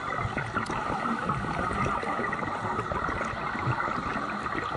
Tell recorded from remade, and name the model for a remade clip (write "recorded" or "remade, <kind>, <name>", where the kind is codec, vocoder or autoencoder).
recorded